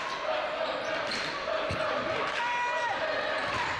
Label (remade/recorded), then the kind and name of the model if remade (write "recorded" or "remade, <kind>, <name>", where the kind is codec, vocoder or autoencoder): recorded